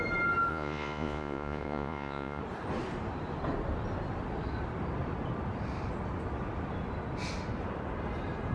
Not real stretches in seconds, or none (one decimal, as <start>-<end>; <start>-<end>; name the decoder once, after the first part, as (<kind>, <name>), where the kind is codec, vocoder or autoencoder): 0.5-2.4 (vocoder, Vocos)